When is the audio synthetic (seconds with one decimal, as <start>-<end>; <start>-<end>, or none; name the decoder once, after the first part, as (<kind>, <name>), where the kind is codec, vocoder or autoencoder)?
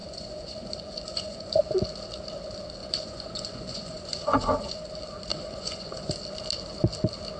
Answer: 0.0-1.6 (vocoder, Vocos); 2.8-4.7; 5.3-6.2